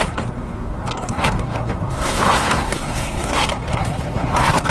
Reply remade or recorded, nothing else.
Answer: remade